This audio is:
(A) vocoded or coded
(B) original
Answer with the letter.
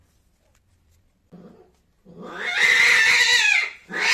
B